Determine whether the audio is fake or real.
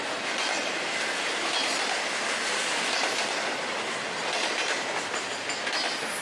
real